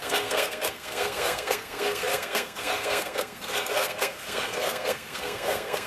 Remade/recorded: remade